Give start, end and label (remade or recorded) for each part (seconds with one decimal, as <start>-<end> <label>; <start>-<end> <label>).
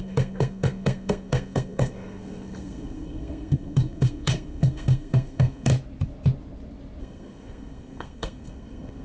0.0-5.7 remade; 5.7-7.0 recorded; 7.0-9.0 remade